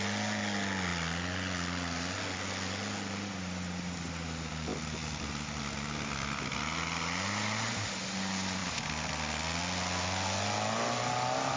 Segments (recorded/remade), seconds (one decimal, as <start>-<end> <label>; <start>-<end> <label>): 0.0-11.6 recorded